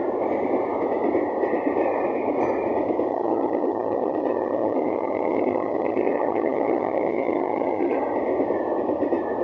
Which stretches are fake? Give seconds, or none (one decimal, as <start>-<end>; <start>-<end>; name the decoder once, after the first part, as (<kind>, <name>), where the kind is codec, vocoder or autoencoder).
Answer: 3.1-8.0 (vocoder, HiFi-GAN)